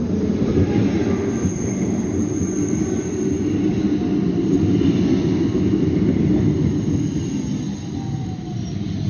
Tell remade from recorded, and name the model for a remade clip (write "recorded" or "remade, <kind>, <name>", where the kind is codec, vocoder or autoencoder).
recorded